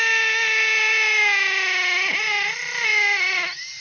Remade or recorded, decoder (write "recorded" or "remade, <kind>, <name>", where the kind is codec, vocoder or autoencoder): recorded